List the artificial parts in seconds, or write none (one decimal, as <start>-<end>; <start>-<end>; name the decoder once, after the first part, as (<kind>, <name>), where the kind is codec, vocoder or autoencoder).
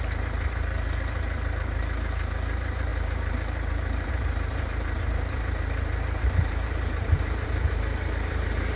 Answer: 0.0-8.8 (vocoder, BigVGAN v2)